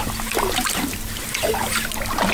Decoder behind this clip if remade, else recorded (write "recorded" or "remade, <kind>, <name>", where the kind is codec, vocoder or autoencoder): recorded